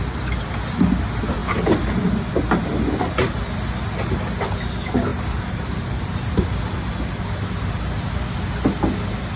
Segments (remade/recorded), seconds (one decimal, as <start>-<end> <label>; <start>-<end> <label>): 0.0-5.1 recorded; 5.1-6.4 remade; 6.4-9.4 recorded

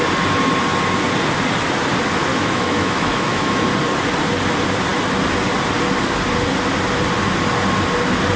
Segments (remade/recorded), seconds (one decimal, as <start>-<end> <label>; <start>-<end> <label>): 0.0-2.3 recorded; 2.3-3.7 remade; 3.7-8.4 recorded

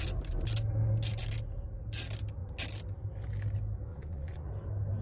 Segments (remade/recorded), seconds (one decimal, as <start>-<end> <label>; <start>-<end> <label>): 0.0-3.9 recorded; 3.9-4.5 remade; 4.5-5.0 recorded

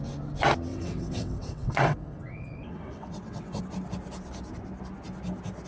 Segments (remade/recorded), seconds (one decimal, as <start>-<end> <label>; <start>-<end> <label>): 0.0-0.7 recorded; 0.7-3.6 remade; 3.6-5.7 recorded

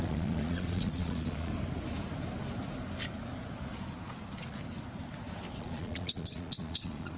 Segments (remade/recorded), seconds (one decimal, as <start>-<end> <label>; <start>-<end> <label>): 0.0-1.5 remade; 1.5-5.6 recorded; 5.6-7.2 remade

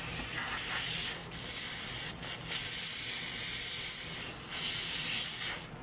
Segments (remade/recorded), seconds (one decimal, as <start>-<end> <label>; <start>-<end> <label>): 0.0-5.8 recorded

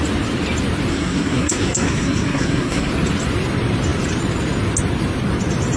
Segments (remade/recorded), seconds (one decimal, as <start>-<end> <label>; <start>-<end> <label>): 0.0-0.9 recorded; 0.9-2.9 remade; 2.9-5.8 recorded

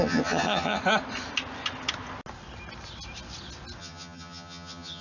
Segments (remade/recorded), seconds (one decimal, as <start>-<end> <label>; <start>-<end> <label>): 0.0-0.8 remade; 0.8-3.8 recorded; 3.8-5.0 remade